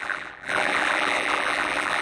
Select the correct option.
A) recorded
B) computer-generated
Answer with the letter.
B